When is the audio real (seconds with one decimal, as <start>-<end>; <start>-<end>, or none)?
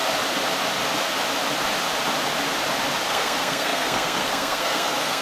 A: 0.0-3.1